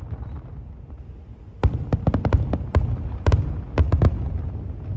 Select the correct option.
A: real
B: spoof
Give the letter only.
A